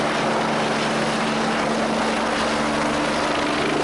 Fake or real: real